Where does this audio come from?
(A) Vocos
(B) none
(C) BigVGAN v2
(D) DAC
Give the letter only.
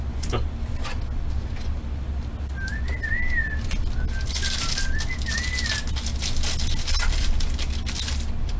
B